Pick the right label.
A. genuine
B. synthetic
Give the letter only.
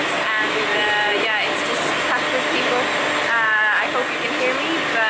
A